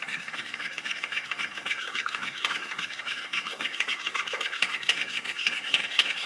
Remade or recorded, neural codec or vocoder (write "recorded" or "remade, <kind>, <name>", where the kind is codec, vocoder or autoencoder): remade, codec, SNAC